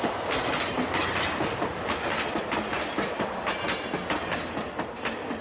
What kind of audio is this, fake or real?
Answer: real